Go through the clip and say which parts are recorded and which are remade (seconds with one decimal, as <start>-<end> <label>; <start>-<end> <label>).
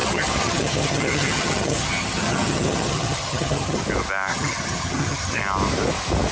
0.0-3.8 remade; 3.8-4.3 recorded; 4.3-5.4 remade; 5.4-6.3 recorded